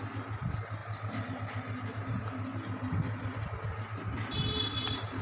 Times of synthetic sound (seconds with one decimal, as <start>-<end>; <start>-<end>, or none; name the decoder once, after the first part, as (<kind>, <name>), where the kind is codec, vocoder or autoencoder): none